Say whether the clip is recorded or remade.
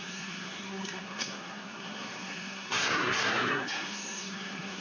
remade